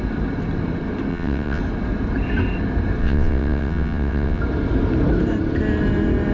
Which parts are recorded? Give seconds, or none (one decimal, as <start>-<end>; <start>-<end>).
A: 0.0-1.1; 1.6-3.0; 4.4-6.3